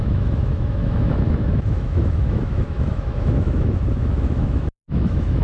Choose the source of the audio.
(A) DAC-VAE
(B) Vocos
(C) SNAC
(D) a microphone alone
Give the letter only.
A